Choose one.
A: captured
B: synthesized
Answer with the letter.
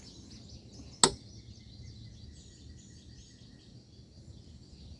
A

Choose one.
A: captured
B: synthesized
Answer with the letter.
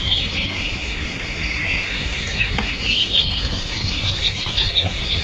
B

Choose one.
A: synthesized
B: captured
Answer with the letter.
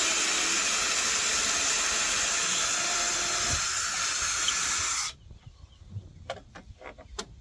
B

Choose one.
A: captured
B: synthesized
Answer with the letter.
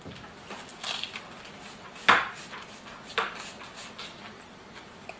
A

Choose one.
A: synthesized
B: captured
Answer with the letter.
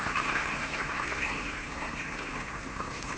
A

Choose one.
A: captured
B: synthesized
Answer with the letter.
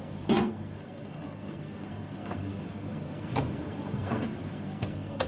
B